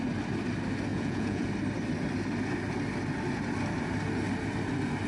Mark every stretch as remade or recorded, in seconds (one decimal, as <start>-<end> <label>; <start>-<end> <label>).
0.0-0.9 recorded; 0.9-1.5 remade; 1.5-5.1 recorded